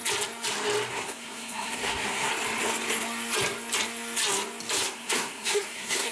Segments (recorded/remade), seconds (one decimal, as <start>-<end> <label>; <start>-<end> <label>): 0.0-0.9 recorded; 0.9-2.3 remade; 2.3-4.8 recorded; 4.8-6.1 remade